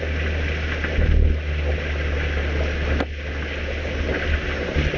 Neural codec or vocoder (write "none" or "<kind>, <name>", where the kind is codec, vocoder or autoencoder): none